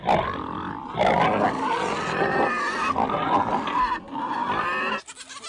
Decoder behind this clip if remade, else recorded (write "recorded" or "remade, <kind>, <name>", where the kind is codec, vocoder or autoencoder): recorded